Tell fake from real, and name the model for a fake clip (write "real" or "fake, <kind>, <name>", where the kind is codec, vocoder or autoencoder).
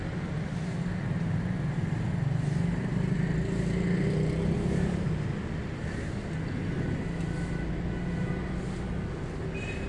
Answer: real